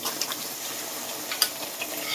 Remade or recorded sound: recorded